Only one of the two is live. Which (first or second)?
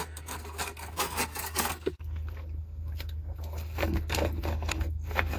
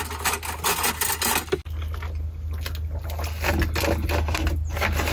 second